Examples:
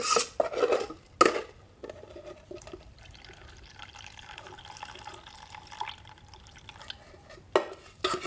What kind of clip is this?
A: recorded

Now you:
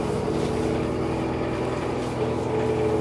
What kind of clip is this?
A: recorded